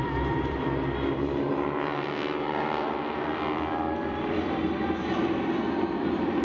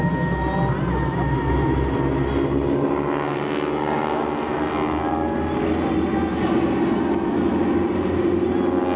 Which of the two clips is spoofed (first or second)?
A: first